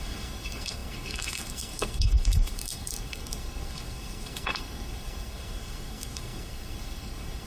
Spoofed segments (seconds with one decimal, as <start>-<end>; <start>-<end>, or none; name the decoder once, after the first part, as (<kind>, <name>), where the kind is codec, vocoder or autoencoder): 0.0-7.5 (codec, SNAC)